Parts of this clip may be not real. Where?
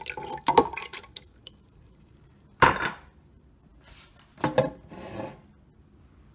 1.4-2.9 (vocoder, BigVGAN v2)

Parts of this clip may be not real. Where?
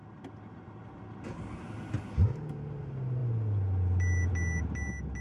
none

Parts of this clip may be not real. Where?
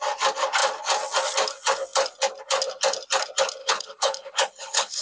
3.6-5.0 (codec, HILCodec)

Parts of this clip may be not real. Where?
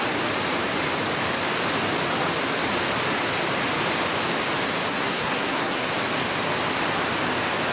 4.9-5.9 (codec, SNAC)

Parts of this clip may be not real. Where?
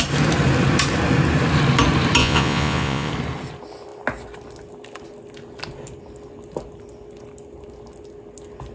2.2-3.1 (vocoder, Vocos)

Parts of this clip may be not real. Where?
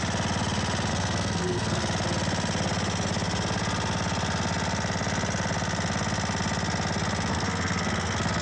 0.9-1.8 (codec, SNAC); 7.3-8.4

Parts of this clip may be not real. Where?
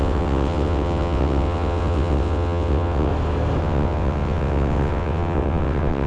0.0-3.1 (vocoder, WaveNeXt); 3.6-6.1